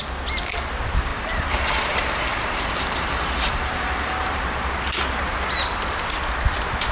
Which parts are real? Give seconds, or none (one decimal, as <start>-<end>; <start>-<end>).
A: 0.0-1.1; 4.7-6.9